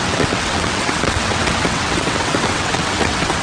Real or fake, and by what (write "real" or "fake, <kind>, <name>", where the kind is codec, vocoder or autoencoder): fake, vocoder, WaveNeXt